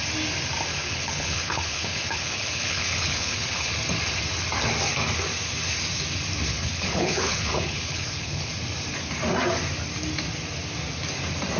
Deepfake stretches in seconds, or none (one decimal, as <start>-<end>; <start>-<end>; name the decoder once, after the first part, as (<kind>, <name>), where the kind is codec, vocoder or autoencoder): 0.7-3.7 (codec, HILCodec); 6.5-8.5